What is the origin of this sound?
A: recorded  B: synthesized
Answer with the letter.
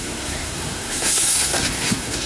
B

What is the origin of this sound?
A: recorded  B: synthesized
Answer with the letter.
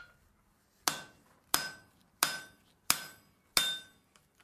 A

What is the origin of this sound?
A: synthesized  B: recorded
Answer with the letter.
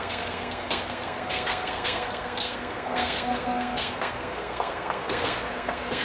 A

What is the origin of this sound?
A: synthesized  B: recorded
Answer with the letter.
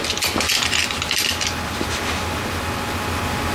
B